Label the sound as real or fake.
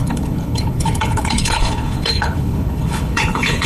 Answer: fake